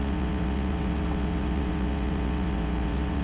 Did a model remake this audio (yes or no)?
yes